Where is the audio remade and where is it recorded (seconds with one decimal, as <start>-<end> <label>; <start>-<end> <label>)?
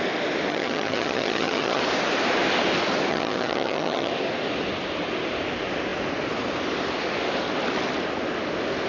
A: 0.0-0.5 recorded; 0.5-1.8 remade; 1.8-3.1 recorded; 3.1-4.1 remade; 4.1-8.9 recorded